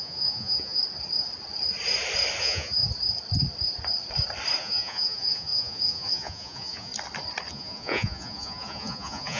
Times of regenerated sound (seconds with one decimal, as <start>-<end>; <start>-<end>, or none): 0.0-0.8; 2.4-2.8; 4.6-6.9; 7.5-9.4

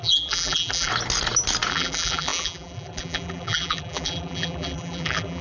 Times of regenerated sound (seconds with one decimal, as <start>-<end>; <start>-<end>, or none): 0.0-0.9; 1.7-5.4

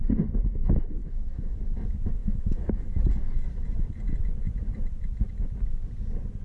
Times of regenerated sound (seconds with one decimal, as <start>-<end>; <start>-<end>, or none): 1.0-1.6; 2.2-3.1

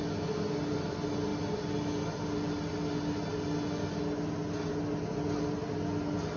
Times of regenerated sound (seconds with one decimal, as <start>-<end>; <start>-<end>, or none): none